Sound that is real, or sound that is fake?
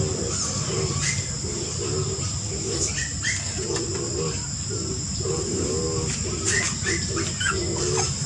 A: real